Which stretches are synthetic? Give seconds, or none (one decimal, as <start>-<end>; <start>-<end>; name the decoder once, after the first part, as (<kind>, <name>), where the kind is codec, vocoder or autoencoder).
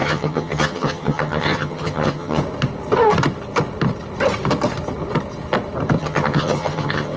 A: 0.0-2.4 (vocoder, HiFi-GAN); 6.0-7.2